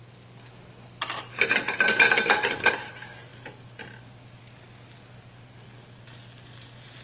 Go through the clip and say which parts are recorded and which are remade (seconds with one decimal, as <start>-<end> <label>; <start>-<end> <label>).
0.0-7.0 recorded